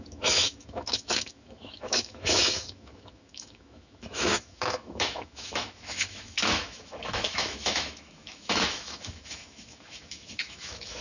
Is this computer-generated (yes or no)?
yes